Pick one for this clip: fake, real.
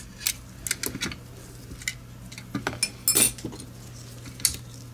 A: real